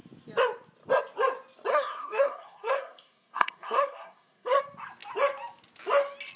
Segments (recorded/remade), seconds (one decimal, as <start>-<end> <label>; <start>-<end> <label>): 0.0-1.7 recorded; 1.7-4.6 remade; 4.6-6.4 recorded